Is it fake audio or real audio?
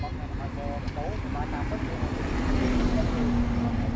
real